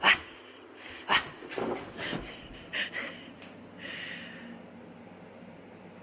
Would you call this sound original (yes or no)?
yes